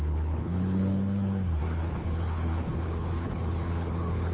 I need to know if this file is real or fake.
fake